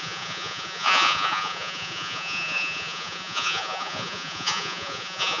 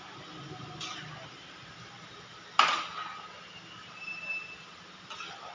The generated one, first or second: first